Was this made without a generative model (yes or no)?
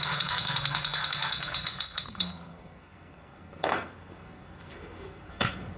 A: no